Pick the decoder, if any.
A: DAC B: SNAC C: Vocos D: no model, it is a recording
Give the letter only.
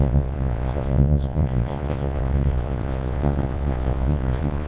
C